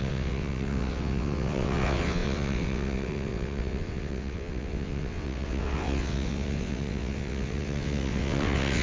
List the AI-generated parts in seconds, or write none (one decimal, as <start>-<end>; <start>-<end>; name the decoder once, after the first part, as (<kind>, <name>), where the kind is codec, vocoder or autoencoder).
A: 0.0-8.8 (vocoder, WaveNeXt)